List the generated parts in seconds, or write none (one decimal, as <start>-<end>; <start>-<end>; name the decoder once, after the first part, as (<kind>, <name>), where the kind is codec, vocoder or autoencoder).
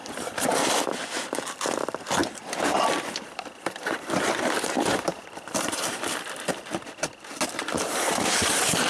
2.2-6.5 (vocoder, BigVGAN v2)